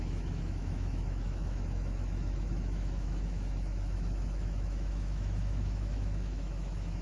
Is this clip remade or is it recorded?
remade